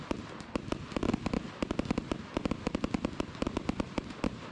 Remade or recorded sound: recorded